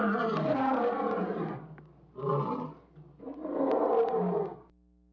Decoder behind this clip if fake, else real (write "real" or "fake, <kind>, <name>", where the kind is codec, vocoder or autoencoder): real